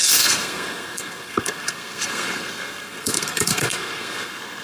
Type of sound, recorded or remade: remade